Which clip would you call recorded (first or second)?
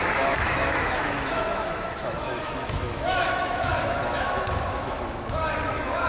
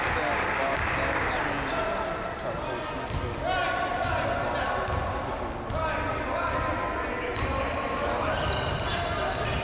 second